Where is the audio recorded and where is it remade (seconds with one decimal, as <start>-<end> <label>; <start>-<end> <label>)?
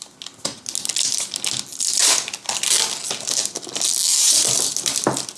0.0-5.4 recorded